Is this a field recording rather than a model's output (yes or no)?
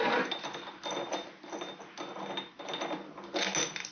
yes